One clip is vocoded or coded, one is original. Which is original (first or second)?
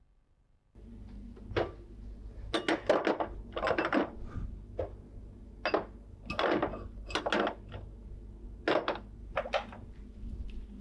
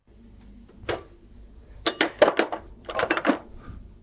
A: first